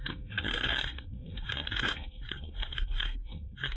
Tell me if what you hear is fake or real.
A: fake